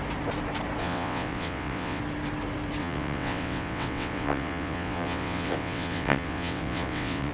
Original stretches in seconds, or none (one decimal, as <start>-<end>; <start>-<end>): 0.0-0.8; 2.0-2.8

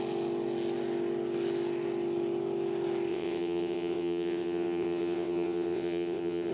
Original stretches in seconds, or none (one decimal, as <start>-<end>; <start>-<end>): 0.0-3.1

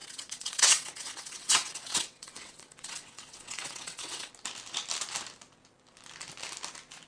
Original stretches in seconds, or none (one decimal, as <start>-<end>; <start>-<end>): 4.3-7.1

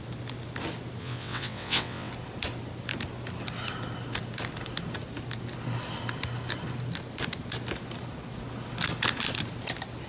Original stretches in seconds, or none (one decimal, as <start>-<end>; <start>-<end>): 0.0-1.0; 2.1-10.1